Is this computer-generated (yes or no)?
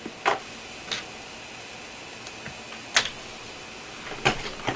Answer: no